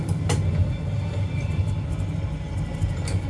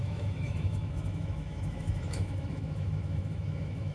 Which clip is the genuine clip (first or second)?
first